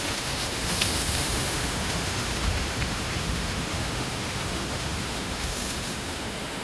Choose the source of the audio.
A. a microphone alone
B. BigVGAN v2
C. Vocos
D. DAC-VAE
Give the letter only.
D